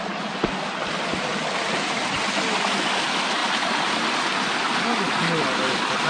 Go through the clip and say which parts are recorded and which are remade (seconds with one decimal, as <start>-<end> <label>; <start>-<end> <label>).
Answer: 0.0-6.1 recorded

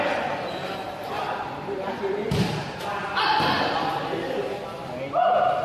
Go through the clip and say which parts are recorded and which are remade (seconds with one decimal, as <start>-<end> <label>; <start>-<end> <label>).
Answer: 0.0-0.6 recorded; 0.6-3.9 remade; 3.9-5.6 recorded

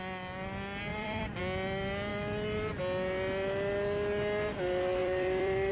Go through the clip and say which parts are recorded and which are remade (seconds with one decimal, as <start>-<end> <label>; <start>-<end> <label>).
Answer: 0.0-0.9 recorded; 0.9-1.4 remade; 1.4-5.0 recorded; 5.0-5.7 remade

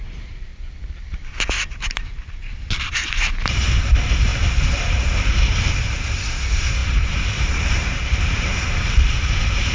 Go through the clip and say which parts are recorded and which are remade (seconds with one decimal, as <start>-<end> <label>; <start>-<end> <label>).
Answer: 0.0-0.5 remade; 0.5-1.8 recorded; 1.8-9.7 remade

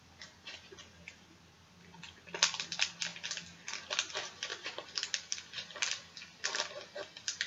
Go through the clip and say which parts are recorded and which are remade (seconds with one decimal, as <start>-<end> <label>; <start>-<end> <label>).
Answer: 0.0-4.5 recorded; 4.5-5.1 remade; 5.1-7.5 recorded

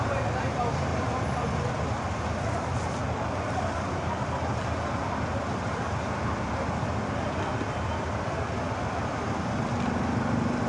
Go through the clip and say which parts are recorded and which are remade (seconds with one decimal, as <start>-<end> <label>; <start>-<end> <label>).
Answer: 0.0-0.9 recorded; 0.9-1.7 remade; 1.7-10.7 recorded

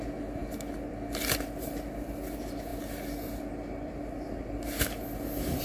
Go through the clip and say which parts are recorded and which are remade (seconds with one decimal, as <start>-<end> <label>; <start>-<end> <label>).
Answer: 0.0-5.6 recorded